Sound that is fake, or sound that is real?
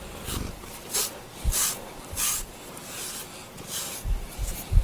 real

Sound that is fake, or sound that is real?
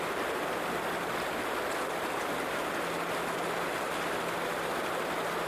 real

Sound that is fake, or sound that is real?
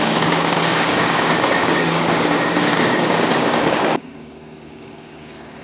fake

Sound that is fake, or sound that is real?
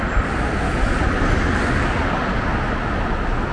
real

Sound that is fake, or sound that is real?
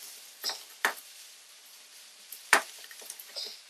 fake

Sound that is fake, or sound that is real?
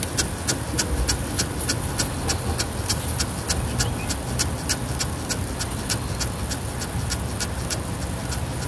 real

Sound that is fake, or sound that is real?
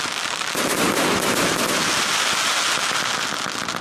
real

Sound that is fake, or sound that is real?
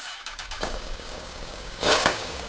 fake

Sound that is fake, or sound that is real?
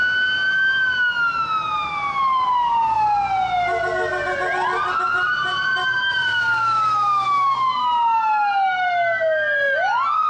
real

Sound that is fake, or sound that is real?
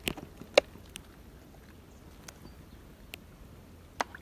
real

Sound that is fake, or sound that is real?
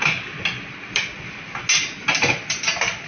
real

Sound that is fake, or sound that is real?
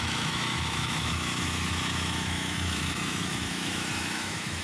fake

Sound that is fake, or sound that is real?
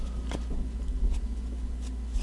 real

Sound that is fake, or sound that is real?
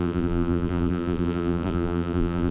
fake